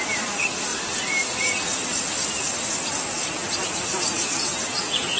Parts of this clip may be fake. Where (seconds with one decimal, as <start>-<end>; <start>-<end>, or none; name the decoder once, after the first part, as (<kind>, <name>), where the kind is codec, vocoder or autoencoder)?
0.0-0.7 (vocoder, BigVGAN v2); 3.5-5.2